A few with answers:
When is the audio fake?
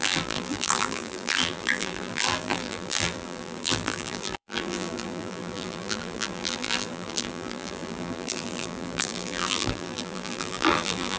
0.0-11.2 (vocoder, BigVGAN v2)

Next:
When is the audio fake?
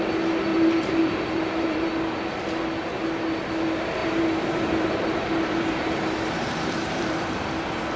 0.5-1.9 (vocoder, BigVGAN v2); 4.0-7.3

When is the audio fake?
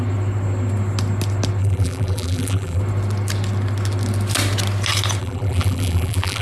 1.6-2.8 (vocoder, BigVGAN v2); 5.2-6.4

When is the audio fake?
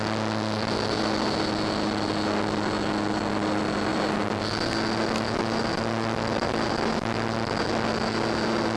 none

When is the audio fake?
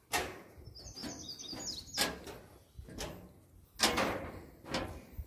none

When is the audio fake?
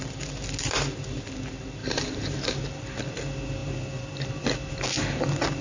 1.8-2.6 (vocoder, BigVGAN v2)